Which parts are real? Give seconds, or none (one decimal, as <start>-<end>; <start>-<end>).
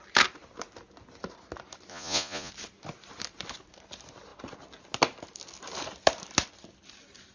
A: 0.0-1.9; 2.5-7.3